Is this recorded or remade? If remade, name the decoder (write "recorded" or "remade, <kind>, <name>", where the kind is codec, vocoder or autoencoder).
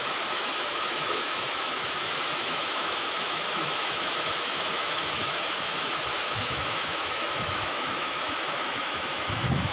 remade, autoencoder, DAC-VAE